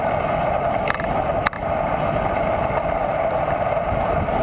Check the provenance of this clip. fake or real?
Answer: real